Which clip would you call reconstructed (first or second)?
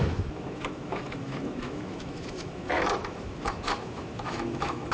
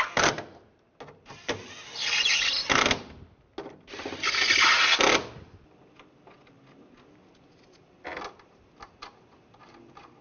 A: first